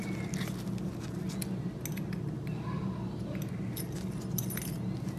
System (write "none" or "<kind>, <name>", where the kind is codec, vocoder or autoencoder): none